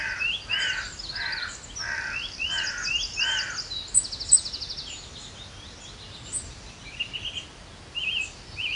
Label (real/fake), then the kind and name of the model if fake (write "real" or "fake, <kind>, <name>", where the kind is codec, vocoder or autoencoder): real